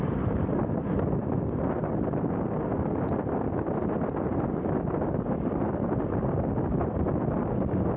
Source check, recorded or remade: recorded